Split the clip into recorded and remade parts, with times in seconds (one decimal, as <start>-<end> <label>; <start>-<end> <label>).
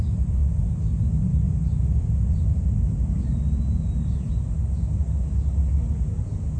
0.0-6.6 recorded